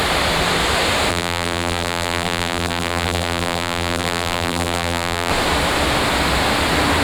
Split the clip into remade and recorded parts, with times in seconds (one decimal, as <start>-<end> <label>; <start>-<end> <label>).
0.0-1.1 recorded; 1.1-5.3 remade; 5.3-7.0 recorded